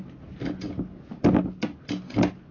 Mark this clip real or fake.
real